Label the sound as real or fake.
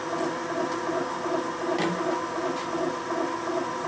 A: real